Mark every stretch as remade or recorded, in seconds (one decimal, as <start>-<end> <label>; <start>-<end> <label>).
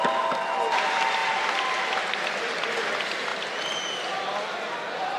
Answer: 0.0-5.2 recorded